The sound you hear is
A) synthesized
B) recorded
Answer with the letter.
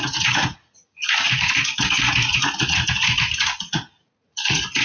A